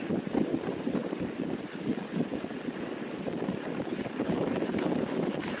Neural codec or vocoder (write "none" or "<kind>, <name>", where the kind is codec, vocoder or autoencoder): none